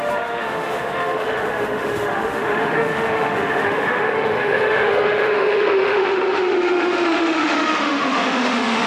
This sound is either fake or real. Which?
fake